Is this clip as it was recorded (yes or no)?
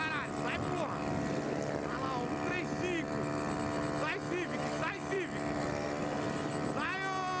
yes